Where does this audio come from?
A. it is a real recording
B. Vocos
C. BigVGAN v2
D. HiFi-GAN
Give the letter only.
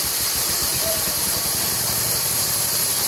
C